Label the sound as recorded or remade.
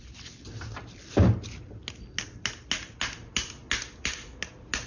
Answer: recorded